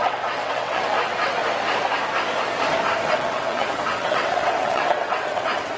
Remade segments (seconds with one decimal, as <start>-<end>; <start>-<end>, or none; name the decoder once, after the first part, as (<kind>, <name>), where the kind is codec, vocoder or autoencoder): 0.0-1.4 (vocoder, WaveNeXt); 3.1-5.8

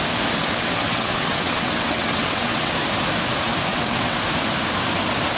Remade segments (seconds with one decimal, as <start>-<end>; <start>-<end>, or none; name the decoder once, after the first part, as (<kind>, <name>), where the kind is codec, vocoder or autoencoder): 0.4-2.7 (vocoder, WaveNeXt); 3.7-4.2